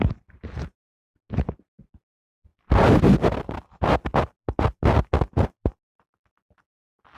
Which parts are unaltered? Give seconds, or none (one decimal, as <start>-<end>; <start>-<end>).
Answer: 0.0-7.2